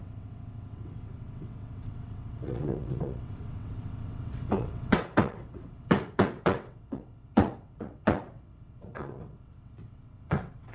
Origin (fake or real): fake